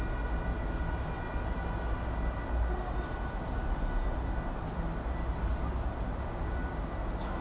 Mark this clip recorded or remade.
recorded